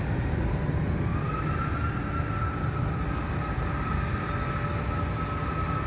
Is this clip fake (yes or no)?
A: no